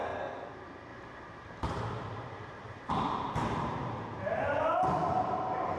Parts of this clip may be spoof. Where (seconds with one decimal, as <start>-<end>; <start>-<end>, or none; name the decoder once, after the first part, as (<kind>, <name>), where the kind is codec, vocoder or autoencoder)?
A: 0.9-2.9 (vocoder, BigVGAN v2); 3.4-4.4